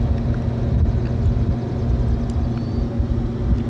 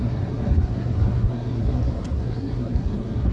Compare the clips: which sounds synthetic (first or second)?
second